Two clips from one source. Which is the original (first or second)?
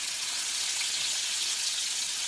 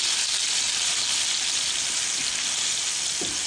second